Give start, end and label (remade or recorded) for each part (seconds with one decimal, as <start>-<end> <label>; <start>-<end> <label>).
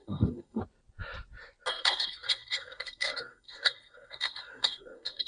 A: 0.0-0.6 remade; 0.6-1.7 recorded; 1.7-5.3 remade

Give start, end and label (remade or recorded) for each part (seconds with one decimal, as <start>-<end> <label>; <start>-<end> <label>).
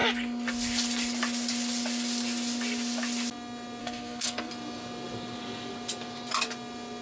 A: 0.0-3.8 recorded; 3.8-4.5 remade; 4.5-7.0 recorded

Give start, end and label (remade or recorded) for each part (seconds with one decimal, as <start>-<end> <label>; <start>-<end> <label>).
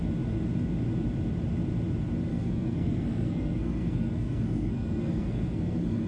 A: 0.0-2.3 recorded; 2.3-6.1 remade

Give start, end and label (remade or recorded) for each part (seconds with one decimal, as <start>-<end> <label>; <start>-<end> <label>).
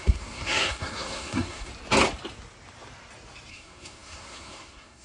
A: 0.0-1.7 remade; 1.7-3.5 recorded; 3.5-5.0 remade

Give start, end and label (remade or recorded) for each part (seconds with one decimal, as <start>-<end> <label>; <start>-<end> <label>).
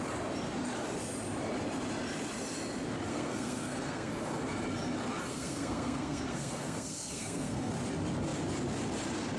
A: 0.0-3.1 recorded; 3.1-4.1 remade; 4.1-5.3 recorded; 5.3-7.7 remade; 7.7-9.4 recorded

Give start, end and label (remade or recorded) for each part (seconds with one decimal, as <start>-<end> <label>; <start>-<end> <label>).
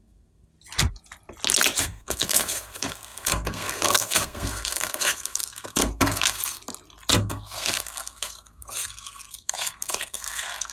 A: 0.0-0.5 remade; 0.5-1.8 recorded; 1.8-6.6 remade; 6.6-7.2 recorded; 7.2-10.7 remade